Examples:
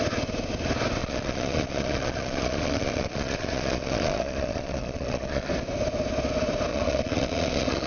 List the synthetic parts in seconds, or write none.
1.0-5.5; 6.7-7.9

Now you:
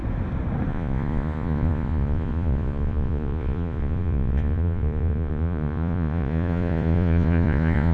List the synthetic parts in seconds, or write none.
0.7-7.9

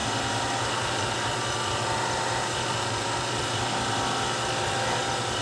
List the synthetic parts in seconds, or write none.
none